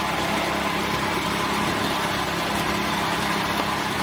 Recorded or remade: recorded